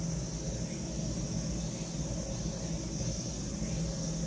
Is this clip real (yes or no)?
yes